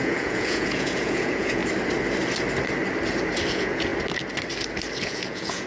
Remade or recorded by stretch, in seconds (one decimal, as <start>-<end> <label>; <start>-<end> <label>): 0.0-1.6 remade; 1.6-3.5 recorded; 3.5-3.9 remade; 3.9-5.0 recorded; 5.0-5.7 remade